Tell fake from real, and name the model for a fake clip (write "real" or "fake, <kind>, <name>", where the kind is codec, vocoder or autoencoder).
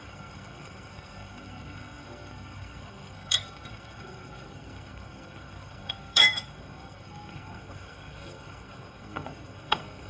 fake, codec, SNAC